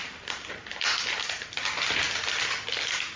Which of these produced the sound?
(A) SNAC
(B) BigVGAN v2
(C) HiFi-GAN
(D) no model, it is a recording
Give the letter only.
D